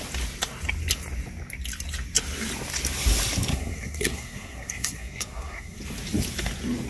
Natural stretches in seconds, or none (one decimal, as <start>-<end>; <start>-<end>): 0.0-3.5; 5.8-6.9